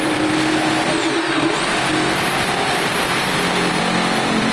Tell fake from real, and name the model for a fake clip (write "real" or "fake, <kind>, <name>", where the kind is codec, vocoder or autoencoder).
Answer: real